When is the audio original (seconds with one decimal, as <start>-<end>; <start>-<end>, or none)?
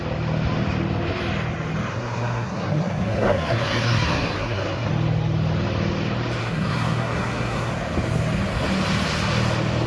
0.0-1.9; 4.9-6.4; 7.7-9.9